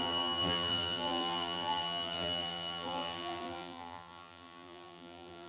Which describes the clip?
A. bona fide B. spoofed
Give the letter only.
B